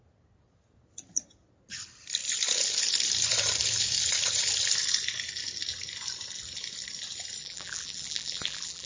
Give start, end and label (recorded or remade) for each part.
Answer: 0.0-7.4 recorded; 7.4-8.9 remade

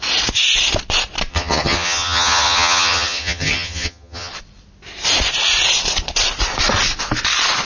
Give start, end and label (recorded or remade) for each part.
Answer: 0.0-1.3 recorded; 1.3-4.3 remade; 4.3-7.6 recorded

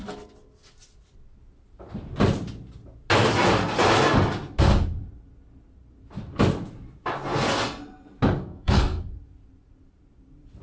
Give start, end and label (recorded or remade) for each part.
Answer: 0.0-8.4 recorded; 8.4-9.1 remade; 9.1-10.6 recorded